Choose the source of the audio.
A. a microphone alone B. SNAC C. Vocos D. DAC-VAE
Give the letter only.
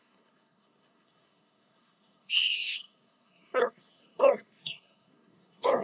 B